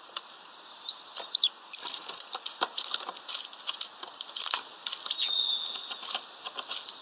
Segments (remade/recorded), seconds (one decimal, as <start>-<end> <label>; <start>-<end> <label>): 0.0-7.0 recorded